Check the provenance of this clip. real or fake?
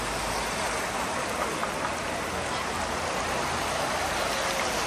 real